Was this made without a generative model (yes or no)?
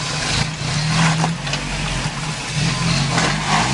yes